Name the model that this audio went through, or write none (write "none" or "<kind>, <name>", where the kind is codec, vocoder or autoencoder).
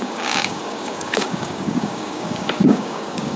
codec, DAC